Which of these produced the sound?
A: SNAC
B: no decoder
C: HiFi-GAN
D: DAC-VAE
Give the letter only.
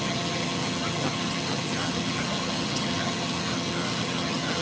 C